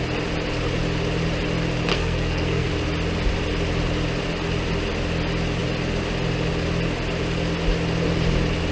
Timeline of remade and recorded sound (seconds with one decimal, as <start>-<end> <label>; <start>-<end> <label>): 0.0-1.9 recorded; 1.9-2.7 remade; 2.7-8.7 recorded